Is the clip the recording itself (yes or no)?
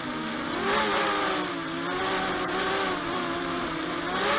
yes